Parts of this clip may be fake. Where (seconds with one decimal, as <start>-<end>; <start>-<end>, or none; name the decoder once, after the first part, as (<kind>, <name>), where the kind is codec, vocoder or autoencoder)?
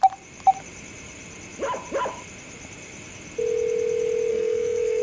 4.3-5.0 (codec, SNAC)